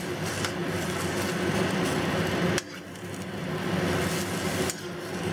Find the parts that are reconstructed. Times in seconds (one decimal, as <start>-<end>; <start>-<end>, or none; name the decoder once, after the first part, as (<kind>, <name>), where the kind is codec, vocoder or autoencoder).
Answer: none

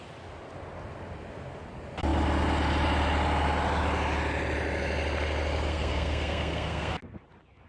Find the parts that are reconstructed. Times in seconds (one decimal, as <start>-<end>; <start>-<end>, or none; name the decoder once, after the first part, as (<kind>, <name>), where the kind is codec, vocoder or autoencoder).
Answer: 5.7-6.9 (codec, SNAC)

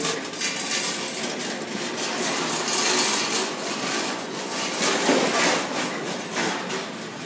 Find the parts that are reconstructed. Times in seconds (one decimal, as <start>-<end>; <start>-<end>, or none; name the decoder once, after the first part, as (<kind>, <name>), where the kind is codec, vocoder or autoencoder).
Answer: 3.1-4.7 (vocoder, Vocos)

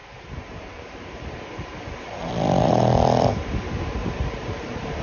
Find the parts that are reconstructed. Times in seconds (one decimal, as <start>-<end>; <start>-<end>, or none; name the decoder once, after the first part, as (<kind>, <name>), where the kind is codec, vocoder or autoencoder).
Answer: 0.0-2.3 (vocoder, BigVGAN v2); 4.0-5.0

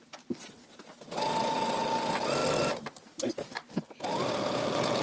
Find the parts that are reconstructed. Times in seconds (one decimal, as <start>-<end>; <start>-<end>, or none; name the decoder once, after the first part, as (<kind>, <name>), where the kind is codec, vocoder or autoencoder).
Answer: none

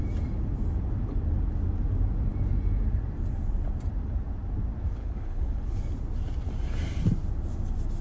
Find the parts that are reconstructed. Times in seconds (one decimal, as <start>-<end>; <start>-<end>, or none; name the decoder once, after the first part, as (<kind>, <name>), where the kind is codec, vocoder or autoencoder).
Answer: 5.0-5.8 (codec, HILCodec)

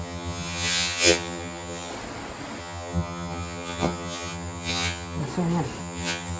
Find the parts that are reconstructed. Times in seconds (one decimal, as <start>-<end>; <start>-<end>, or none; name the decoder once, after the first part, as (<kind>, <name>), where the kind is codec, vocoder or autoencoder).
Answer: 0.0-1.9 (vocoder, HiFi-GAN); 2.6-5.2; 5.8-6.4